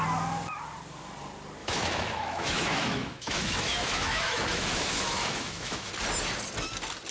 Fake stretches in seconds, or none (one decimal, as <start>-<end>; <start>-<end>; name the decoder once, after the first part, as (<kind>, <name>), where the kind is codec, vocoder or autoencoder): 1.6-5.9 (autoencoder, DAC-VAE)